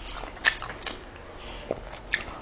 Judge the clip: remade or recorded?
recorded